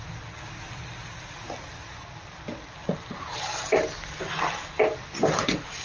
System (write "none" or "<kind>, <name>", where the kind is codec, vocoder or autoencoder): none